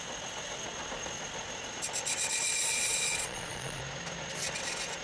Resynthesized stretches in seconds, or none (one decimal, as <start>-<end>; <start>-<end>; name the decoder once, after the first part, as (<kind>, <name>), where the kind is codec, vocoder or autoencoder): 2.6-3.8 (vocoder, Vocos)